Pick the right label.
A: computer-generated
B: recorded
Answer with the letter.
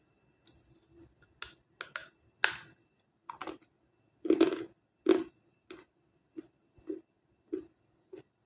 B